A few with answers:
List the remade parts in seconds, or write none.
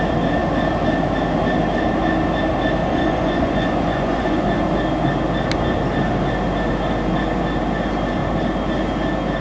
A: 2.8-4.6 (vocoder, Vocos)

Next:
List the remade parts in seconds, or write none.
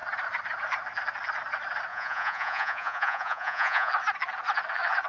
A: 1.9-3.9 (vocoder, Vocos)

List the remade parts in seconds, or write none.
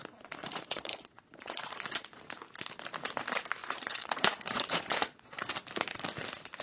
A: 0.4-2.2 (vocoder, Vocos); 3.6-5.5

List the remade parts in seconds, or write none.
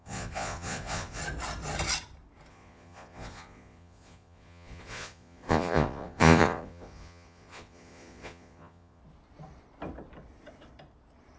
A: 0.0-1.2 (vocoder, Vocos); 2.5-9.0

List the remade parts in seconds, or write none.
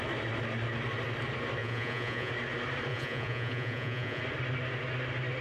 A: 1.6-2.3 (vocoder, Vocos); 2.9-4.2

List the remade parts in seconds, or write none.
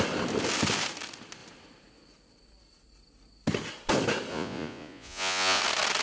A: 4.3-5.6 (vocoder, Vocos)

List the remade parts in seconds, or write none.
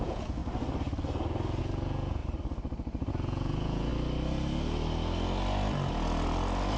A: 0.0-0.4 (vocoder, Vocos); 1.6-2.2; 3.1-3.9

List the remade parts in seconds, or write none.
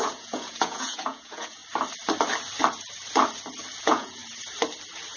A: 0.0-1.6 (vocoder, Vocos); 3.8-4.2